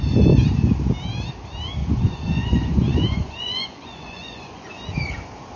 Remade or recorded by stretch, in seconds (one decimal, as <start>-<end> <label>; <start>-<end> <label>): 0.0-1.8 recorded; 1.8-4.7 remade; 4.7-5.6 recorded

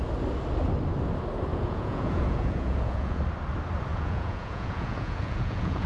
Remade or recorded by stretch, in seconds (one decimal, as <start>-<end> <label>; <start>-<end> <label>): 0.0-1.5 recorded; 1.5-3.2 remade; 3.2-3.9 recorded; 3.9-5.9 remade

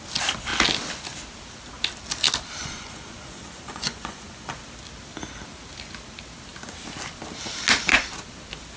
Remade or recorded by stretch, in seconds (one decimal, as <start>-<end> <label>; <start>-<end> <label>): 0.0-2.6 recorded; 2.6-4.5 remade; 4.5-8.8 recorded

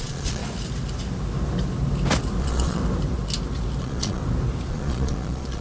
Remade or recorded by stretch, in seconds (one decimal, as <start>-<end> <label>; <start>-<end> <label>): 0.0-0.4 remade; 0.4-2.4 recorded; 2.4-2.8 remade; 2.8-3.8 recorded; 3.8-4.2 remade; 4.2-4.7 recorded; 4.7-5.6 remade